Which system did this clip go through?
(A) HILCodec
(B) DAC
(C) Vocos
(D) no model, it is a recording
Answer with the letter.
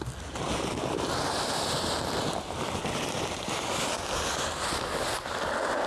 D